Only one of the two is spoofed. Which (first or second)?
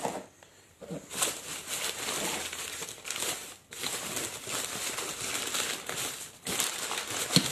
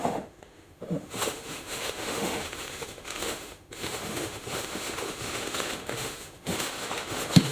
second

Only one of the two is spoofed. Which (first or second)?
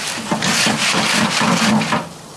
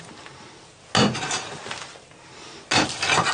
first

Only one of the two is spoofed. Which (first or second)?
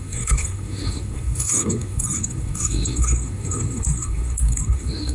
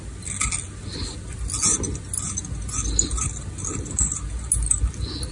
first